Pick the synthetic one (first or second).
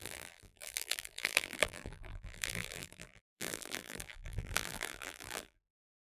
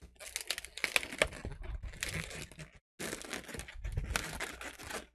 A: first